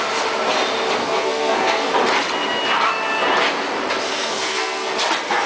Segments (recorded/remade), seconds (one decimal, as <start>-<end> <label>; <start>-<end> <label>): 0.0-1.0 recorded; 1.0-1.9 remade; 1.9-4.1 recorded; 4.1-4.9 remade; 4.9-5.5 recorded